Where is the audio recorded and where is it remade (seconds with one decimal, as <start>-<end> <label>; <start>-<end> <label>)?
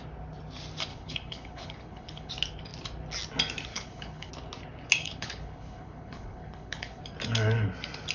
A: 0.0-0.9 recorded; 0.9-2.3 remade; 2.3-3.7 recorded; 3.7-4.3 remade; 4.3-5.0 recorded; 5.0-7.0 remade; 7.0-8.1 recorded